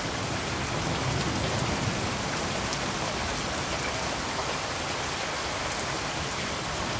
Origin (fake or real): real